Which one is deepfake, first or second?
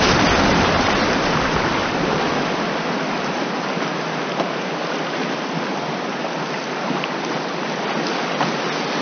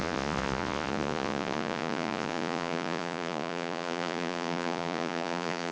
second